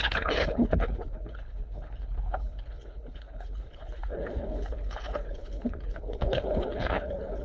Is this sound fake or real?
fake